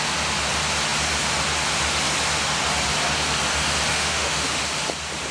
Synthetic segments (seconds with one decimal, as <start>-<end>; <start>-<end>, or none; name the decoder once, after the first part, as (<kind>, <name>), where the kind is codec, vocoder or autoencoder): 3.9-4.6 (autoencoder, DAC-VAE)